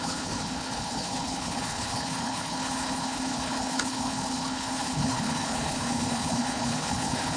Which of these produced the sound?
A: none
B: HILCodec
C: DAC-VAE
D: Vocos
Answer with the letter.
B